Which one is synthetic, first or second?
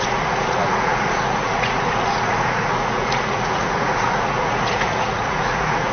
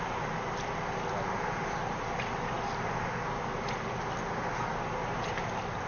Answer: first